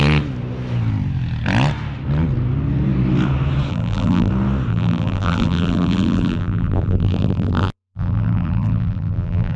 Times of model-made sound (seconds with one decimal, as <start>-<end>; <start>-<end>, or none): 3.7-4.3; 4.7-9.6